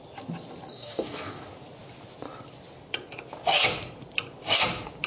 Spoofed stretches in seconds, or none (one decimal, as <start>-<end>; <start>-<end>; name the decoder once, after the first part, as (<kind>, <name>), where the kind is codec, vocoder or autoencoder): 0.7-1.4 (codec, DAC)